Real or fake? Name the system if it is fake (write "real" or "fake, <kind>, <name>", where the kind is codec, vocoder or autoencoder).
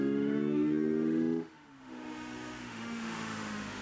fake, autoencoder, DAC-VAE